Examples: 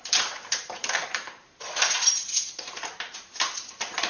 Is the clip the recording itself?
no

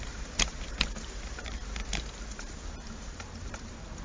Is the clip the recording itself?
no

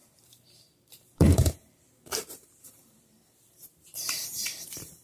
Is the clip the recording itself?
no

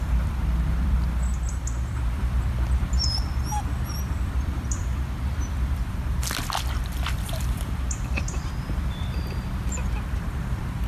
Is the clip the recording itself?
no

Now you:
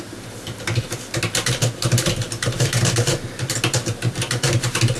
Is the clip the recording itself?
yes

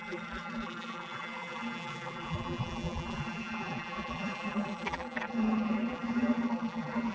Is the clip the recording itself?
no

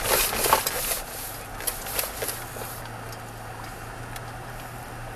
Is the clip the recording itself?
yes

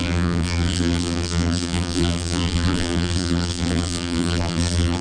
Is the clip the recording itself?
no